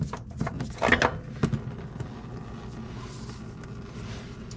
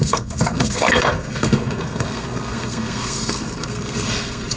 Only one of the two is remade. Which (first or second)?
second